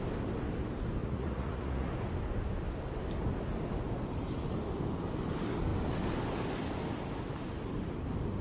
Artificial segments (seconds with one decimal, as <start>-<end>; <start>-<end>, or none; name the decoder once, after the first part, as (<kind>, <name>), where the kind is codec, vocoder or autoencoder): 1.0-1.9 (vocoder, Vocos)